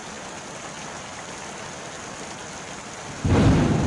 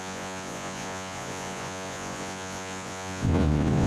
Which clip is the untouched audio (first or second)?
first